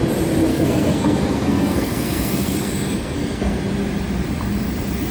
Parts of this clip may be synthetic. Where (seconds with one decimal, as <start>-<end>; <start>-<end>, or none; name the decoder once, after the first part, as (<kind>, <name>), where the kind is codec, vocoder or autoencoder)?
0.5-3.6 (codec, SNAC)